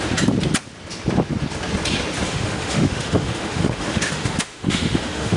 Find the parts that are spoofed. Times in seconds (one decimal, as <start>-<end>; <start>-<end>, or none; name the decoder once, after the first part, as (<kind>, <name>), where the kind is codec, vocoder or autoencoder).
2.3-5.4 (autoencoder, DAC-VAE)

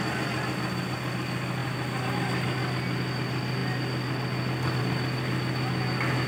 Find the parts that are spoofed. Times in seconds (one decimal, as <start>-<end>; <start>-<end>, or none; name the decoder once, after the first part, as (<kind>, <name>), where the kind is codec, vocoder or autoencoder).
none

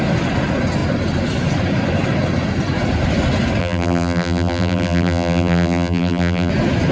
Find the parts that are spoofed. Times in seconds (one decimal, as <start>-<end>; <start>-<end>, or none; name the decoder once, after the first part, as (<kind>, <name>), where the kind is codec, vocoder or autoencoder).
3.6-6.5 (vocoder, BigVGAN v2)